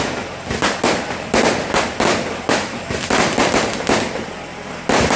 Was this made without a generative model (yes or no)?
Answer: yes